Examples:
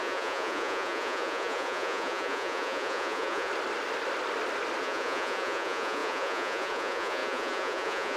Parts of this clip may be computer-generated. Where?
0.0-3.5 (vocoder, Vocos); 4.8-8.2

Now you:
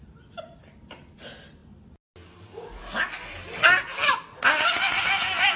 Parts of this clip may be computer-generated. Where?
none